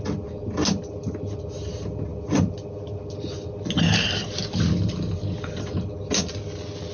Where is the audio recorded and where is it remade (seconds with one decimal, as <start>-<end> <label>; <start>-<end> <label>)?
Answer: 0.0-6.9 recorded